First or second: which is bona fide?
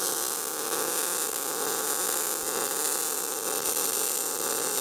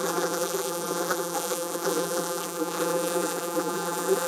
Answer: first